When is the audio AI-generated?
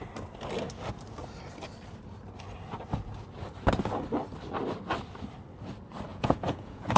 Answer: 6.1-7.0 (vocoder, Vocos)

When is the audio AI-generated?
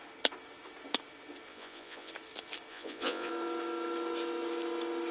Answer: 1.5-2.1 (vocoder, Vocos); 2.7-3.3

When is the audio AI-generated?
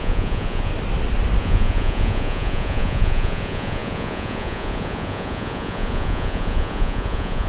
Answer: 0.0-0.7 (vocoder, Vocos); 1.4-7.5